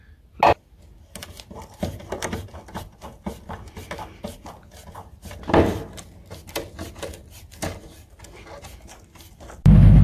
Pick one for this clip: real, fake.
real